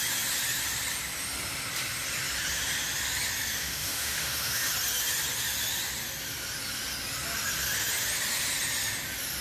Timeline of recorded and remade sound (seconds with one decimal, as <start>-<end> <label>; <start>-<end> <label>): 0.0-3.6 recorded; 3.6-4.7 remade; 4.7-9.4 recorded

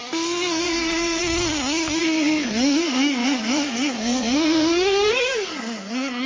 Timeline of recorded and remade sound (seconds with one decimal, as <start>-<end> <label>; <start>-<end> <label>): 0.0-1.2 remade; 1.2-2.0 recorded; 2.0-6.3 remade

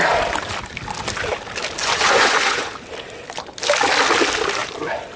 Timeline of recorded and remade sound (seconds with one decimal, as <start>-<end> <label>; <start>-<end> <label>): 0.0-1.8 recorded; 1.8-2.7 remade; 2.7-5.2 recorded

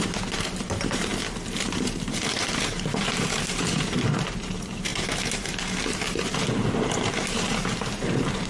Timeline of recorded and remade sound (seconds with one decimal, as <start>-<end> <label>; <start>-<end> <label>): 0.0-1.1 remade; 1.1-1.6 recorded; 1.6-8.5 remade

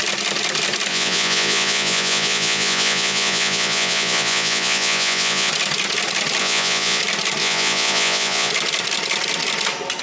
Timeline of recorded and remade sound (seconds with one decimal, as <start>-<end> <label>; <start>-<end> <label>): 0.0-0.9 recorded; 0.9-5.5 remade; 5.5-6.4 recorded; 6.4-7.0 remade; 7.0-7.4 recorded; 7.4-8.5 remade; 8.5-10.0 recorded

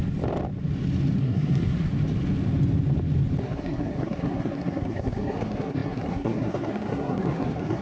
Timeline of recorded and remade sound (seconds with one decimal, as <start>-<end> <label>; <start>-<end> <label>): 0.0-1.2 recorded; 1.2-1.9 remade; 1.9-3.4 recorded; 3.4-7.8 remade